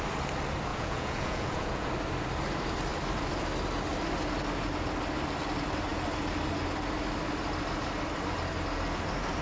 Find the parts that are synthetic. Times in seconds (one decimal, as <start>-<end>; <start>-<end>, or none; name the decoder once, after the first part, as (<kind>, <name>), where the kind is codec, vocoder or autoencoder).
0.7-1.9 (vocoder, Vocos)